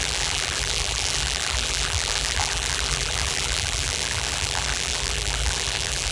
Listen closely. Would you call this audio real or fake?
fake